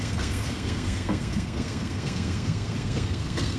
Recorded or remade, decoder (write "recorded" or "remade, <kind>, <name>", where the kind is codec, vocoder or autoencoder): remade, codec, SNAC